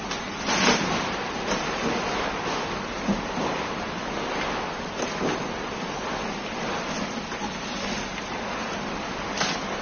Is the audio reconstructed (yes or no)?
no